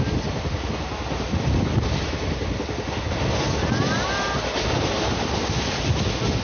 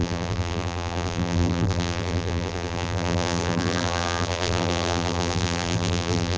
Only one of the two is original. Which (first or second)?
first